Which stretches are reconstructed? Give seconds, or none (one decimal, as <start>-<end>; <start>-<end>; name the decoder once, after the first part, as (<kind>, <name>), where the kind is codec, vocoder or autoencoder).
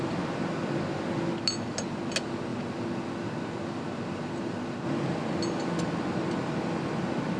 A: none